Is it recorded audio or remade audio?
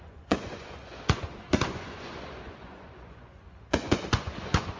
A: remade